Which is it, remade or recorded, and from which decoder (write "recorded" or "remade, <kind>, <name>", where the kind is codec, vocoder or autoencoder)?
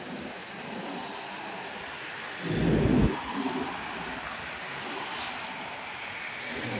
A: recorded